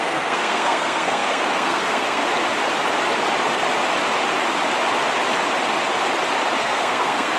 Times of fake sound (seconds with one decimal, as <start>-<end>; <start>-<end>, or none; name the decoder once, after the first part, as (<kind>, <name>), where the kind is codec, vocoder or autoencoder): 0.0-2.2 (codec, SNAC); 6.6-7.4